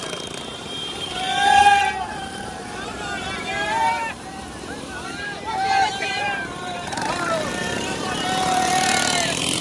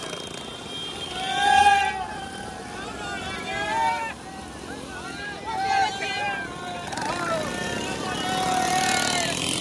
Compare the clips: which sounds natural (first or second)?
second